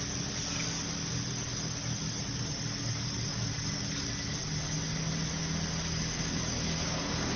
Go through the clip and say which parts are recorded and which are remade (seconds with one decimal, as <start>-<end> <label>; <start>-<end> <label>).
0.0-7.4 recorded